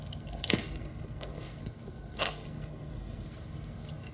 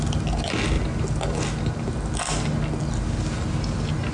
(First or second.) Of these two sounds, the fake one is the first